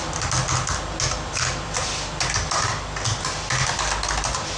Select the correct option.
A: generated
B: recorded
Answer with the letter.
B